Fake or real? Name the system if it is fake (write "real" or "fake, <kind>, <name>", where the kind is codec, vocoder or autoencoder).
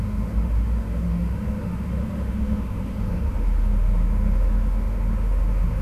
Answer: fake, autoencoder, DAC-VAE